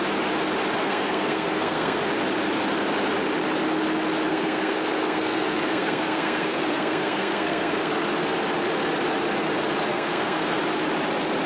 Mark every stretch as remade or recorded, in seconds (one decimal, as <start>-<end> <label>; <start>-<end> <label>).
0.0-0.8 recorded; 0.8-2.0 remade; 2.0-4.3 recorded; 4.3-7.9 remade; 7.9-9.9 recorded; 9.9-10.6 remade; 10.6-11.5 recorded